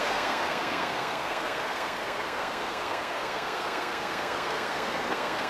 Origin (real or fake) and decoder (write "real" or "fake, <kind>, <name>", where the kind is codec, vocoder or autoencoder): fake, codec, SNAC